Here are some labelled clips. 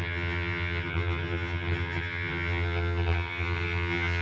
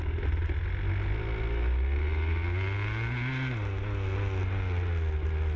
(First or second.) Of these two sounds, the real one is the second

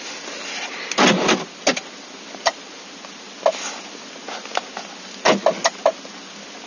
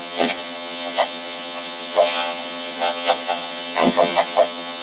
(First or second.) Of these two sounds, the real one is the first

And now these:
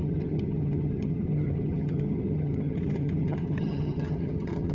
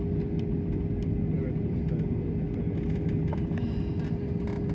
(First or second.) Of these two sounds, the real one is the second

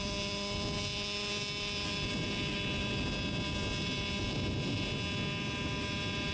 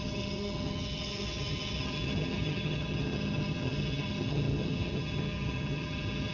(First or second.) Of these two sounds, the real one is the first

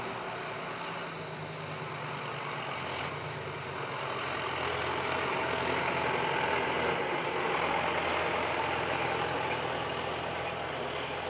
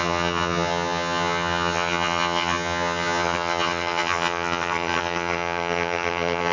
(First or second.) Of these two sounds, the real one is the first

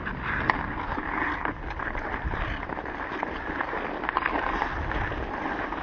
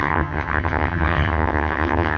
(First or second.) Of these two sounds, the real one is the first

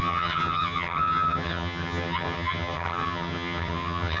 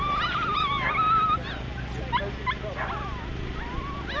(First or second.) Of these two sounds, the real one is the second